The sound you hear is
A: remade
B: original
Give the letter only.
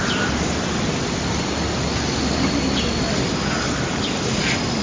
B